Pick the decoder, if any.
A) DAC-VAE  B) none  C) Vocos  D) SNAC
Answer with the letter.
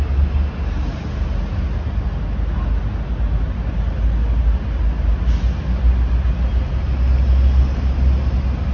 B